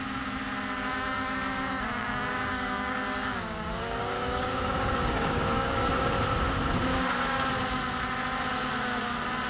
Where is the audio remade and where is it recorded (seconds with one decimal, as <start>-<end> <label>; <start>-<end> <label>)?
0.0-0.9 recorded; 0.9-6.1 remade; 6.1-6.9 recorded; 6.9-7.5 remade; 7.5-9.5 recorded